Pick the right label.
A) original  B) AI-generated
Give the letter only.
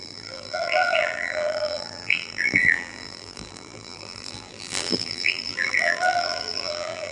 B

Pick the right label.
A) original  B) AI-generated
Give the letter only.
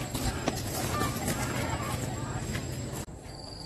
A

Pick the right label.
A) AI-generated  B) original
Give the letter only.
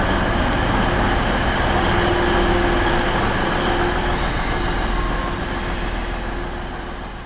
B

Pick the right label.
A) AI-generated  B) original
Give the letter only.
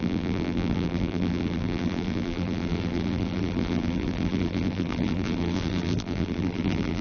A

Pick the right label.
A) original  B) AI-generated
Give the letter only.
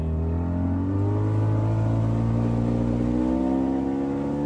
A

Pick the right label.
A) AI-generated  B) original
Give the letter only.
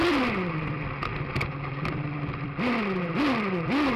B